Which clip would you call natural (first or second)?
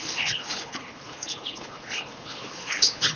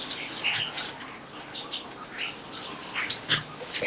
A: second